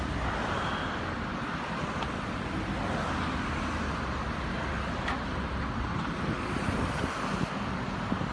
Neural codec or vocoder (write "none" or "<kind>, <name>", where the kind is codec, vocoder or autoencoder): none